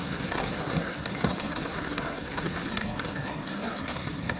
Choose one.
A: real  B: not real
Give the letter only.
B